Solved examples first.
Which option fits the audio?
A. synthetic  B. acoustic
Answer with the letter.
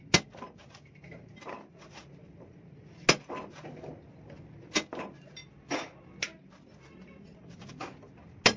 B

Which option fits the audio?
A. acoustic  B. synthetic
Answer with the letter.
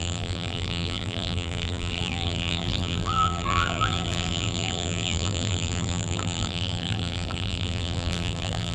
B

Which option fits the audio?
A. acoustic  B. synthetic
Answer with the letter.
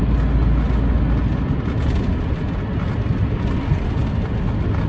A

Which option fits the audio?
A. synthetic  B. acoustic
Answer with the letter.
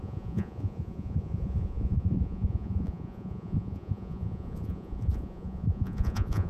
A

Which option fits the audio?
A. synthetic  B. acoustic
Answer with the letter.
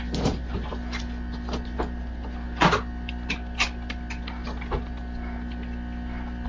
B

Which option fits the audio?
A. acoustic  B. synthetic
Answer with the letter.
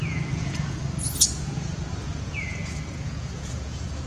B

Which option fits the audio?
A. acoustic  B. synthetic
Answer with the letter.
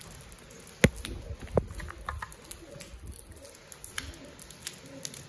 A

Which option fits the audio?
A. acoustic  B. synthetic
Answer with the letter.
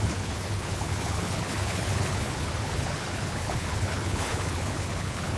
B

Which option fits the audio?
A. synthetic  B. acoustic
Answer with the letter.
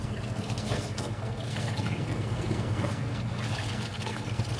A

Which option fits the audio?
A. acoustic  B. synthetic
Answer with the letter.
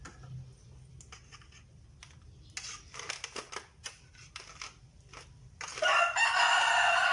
A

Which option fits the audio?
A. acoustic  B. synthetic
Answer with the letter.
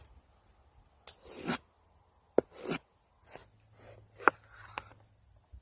A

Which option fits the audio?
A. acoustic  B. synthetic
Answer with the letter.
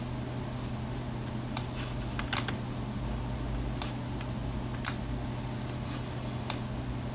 A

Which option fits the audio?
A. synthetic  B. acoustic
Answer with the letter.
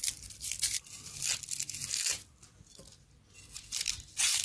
B